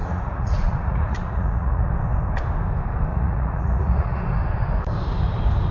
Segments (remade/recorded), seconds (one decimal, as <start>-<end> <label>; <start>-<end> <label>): 0.0-1.9 remade; 1.9-3.1 recorded; 3.1-4.2 remade; 4.2-5.7 recorded